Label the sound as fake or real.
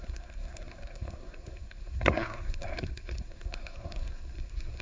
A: fake